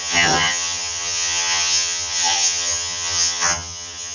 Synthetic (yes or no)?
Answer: yes